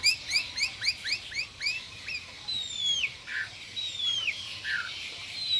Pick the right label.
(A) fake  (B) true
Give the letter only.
B